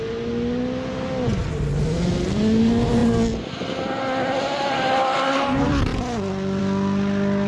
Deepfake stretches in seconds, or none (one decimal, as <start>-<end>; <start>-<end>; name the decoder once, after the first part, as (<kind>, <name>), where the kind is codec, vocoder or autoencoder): none